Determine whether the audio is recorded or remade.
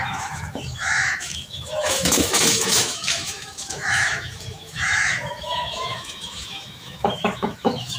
remade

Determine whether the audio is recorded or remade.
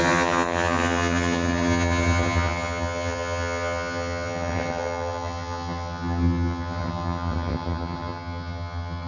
remade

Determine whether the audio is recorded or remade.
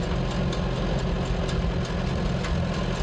recorded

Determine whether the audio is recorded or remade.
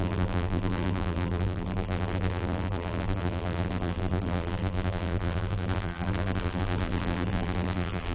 remade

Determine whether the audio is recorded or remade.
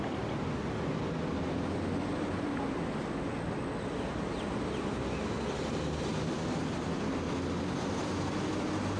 recorded